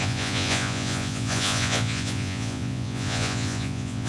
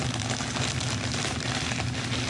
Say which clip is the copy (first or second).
first